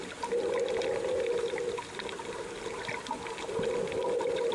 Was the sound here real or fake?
real